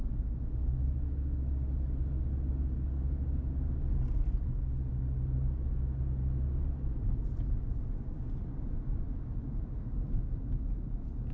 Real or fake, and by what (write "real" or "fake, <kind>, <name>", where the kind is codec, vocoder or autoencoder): real